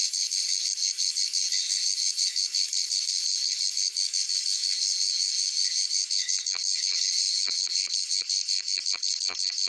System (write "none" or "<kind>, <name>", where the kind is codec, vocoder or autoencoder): codec, HILCodec